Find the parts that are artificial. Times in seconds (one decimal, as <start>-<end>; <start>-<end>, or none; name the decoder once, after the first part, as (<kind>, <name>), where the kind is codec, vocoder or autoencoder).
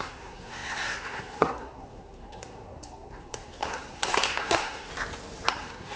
0.0-4.9 (codec, SNAC); 5.5-6.0